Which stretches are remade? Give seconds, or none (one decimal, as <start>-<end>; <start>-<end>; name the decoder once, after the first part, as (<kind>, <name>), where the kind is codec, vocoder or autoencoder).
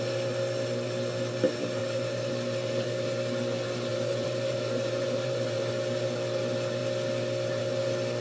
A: 1.8-2.3 (vocoder, BigVGAN v2); 3.9-5.7